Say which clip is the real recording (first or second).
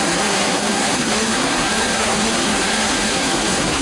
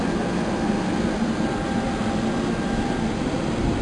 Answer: second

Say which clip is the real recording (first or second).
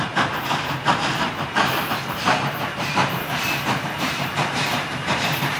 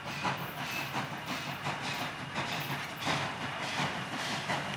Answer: second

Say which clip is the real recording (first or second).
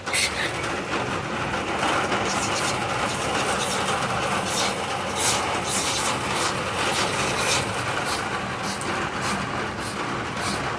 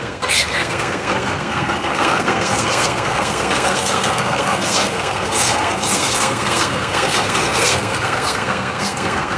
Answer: first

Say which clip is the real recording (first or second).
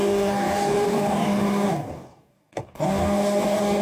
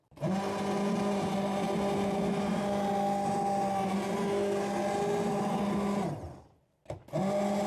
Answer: second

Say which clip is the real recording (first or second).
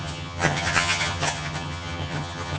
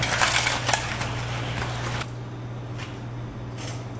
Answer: second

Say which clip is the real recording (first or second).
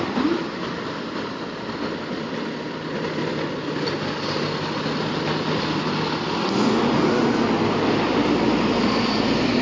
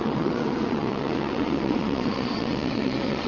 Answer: first